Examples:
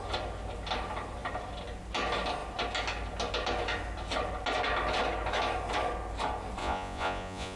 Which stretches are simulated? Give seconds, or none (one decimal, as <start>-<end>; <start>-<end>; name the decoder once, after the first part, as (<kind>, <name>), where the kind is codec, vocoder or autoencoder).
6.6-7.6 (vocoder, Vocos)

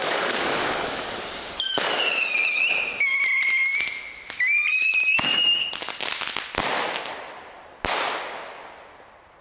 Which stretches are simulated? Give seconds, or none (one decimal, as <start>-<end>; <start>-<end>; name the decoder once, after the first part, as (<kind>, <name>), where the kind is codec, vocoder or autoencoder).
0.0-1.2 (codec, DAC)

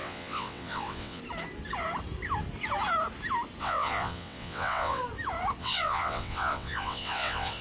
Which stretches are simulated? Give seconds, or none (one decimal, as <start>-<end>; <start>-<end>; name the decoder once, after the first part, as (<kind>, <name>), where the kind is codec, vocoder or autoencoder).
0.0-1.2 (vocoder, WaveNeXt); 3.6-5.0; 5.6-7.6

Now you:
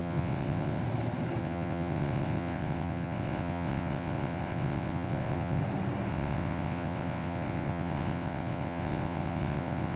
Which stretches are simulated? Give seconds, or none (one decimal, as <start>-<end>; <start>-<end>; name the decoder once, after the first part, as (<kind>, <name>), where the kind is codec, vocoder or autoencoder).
0.0-0.8 (vocoder, WaveNeXt); 1.4-5.6; 6.1-10.0

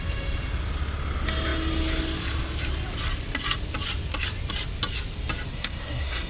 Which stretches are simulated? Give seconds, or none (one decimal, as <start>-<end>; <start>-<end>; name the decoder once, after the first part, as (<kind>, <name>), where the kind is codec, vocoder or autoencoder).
5.5-6.3 (codec, SNAC)

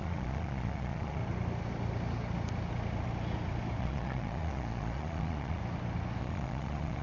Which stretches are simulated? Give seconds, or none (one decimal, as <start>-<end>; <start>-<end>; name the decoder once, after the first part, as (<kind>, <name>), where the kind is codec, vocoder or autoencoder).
0.0-1.2 (vocoder, Vocos); 3.8-5.6; 6.2-7.0

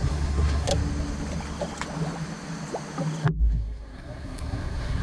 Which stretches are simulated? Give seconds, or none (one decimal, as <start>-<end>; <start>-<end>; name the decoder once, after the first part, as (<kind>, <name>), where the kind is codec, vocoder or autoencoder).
0.0-0.7 (codec, SNAC); 3.4-5.0

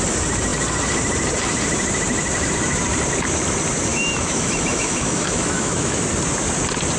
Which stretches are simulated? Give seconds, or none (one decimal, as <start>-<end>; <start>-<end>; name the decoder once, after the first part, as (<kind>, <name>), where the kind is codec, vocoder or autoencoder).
3.9-6.0 (autoencoder, DAC-VAE)